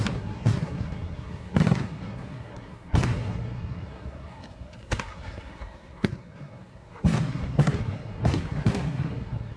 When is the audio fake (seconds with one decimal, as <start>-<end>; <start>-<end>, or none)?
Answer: 0.0-9.6